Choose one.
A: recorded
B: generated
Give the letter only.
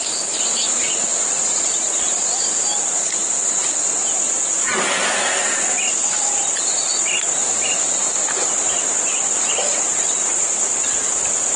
A